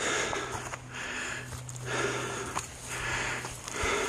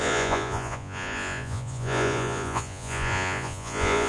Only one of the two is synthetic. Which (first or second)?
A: second